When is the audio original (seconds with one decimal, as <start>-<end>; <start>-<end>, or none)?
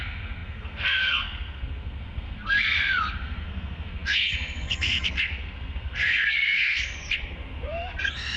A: none